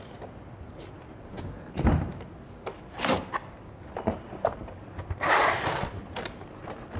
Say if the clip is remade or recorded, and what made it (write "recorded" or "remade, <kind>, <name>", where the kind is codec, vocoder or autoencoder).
recorded